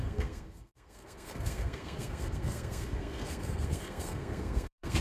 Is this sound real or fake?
fake